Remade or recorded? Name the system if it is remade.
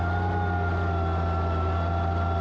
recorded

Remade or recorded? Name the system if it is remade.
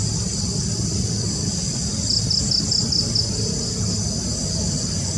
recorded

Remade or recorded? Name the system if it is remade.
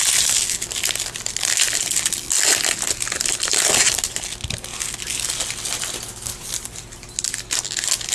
recorded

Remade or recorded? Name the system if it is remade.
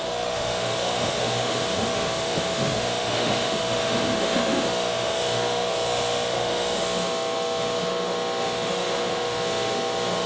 remade, autoencoder, DAC-VAE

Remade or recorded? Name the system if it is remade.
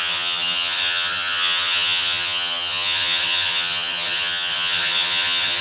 remade, vocoder, HiFi-GAN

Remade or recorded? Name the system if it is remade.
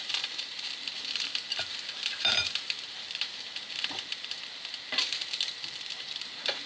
remade, vocoder, BigVGAN v2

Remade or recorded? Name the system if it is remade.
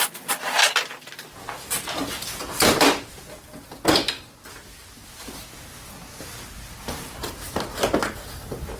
recorded